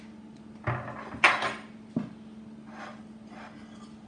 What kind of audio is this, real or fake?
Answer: real